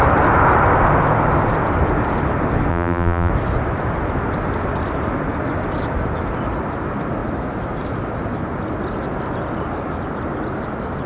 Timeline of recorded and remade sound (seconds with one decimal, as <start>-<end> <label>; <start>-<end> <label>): 0.0-2.7 recorded; 2.7-3.3 remade; 3.3-11.1 recorded